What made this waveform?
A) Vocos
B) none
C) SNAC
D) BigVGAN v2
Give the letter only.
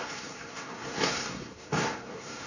C